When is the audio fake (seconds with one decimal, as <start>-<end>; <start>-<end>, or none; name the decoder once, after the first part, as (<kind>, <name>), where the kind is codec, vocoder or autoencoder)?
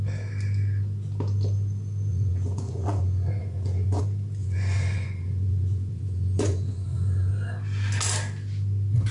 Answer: 2.1-4.0 (vocoder, Vocos); 4.4-7.3